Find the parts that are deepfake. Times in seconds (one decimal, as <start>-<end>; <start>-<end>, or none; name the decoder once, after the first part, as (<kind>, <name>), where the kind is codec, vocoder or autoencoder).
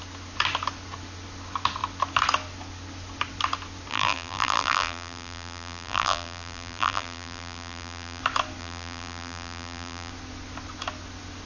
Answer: 3.9-8.2 (vocoder, BigVGAN v2); 8.6-10.1